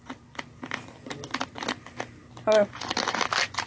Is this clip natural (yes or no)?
yes